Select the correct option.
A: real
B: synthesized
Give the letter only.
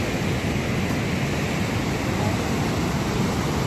A